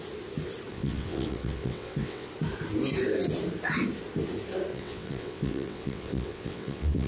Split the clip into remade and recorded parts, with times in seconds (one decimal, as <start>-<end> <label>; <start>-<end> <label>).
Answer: 0.0-0.7 recorded; 0.7-2.3 remade; 2.3-4.7 recorded; 4.7-7.1 remade